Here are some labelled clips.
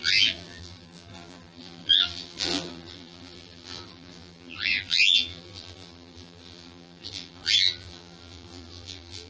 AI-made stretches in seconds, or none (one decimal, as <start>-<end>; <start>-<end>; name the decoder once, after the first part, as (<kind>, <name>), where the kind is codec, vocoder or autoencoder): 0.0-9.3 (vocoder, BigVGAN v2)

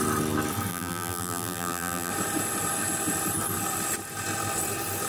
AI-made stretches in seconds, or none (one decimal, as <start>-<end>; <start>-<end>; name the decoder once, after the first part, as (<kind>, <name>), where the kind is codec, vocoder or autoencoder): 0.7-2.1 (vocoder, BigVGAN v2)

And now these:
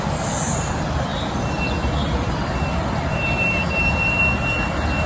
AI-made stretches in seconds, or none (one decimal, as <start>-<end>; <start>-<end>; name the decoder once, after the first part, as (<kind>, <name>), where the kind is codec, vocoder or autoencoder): 1.1-4.2 (vocoder, BigVGAN v2)

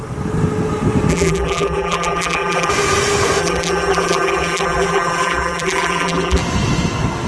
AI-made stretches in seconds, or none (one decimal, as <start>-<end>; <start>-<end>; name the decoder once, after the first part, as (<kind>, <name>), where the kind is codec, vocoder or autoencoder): 1.1-2.7 (vocoder, BigVGAN v2); 3.4-6.4

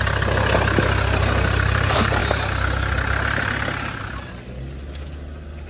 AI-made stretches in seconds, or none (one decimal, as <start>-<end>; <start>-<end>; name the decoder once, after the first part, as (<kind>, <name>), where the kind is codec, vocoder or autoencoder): none